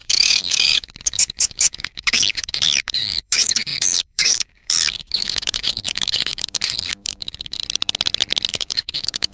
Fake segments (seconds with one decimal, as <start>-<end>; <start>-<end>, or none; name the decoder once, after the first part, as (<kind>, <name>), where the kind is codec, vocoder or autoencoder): 0.0-7.6 (codec, DAC); 8.5-9.3